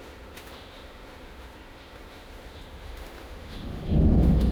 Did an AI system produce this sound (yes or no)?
yes